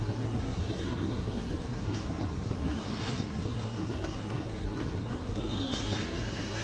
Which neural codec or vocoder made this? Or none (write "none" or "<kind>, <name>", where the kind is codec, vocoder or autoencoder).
codec, SNAC